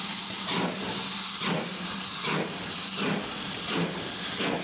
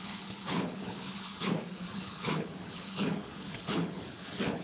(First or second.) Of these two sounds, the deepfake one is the second